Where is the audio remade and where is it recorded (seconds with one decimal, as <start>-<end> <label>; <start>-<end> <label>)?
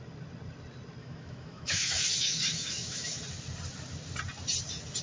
0.0-1.0 recorded; 1.0-3.2 remade; 3.2-5.0 recorded